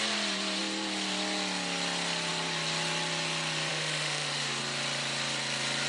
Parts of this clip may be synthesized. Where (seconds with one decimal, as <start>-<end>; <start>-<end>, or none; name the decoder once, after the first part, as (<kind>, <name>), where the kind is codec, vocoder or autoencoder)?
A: 3.7-4.6 (autoencoder, DAC-VAE)